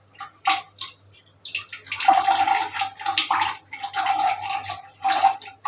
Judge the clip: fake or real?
real